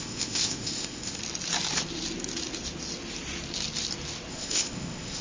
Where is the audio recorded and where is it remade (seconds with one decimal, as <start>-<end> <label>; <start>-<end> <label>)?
0.0-1.2 remade; 1.2-4.3 recorded; 4.3-5.2 remade